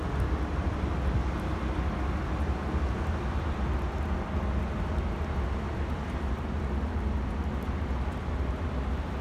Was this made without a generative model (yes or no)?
yes